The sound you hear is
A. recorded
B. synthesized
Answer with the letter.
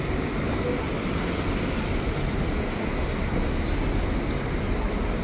A